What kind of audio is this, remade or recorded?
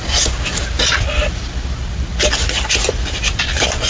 recorded